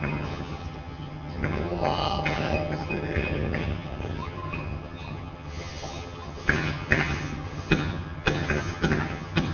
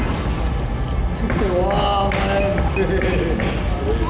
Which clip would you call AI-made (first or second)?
first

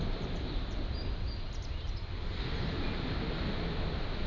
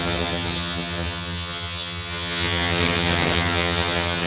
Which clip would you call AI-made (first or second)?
second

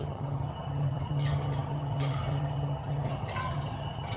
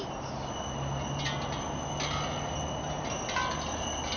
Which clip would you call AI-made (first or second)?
first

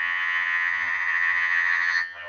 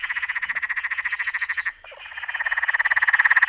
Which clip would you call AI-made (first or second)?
first